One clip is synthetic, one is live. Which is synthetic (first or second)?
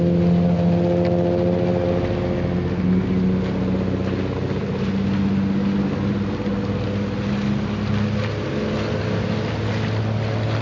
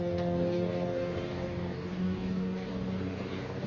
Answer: second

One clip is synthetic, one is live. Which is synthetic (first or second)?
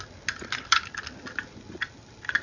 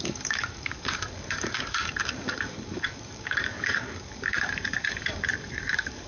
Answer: second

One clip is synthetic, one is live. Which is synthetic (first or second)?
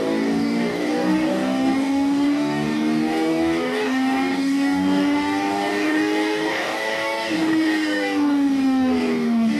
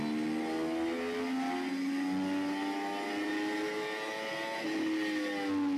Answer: first